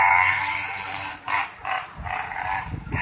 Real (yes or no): no